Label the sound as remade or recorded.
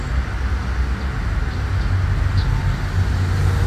recorded